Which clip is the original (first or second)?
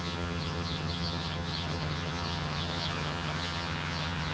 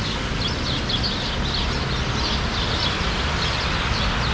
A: second